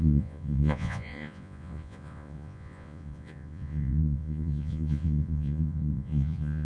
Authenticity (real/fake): fake